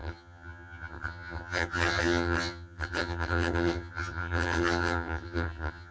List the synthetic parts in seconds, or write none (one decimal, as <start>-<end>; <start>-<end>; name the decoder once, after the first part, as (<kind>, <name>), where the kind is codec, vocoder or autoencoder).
0.0-5.9 (vocoder, HiFi-GAN)